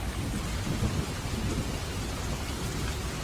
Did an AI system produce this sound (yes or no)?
no